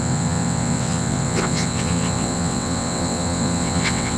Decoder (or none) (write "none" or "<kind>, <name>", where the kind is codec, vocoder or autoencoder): vocoder, WaveNeXt